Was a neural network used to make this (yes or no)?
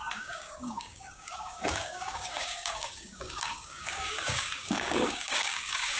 yes